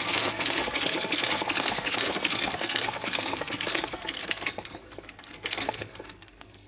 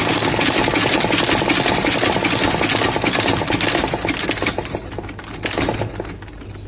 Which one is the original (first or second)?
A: second